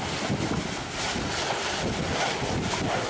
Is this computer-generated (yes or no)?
no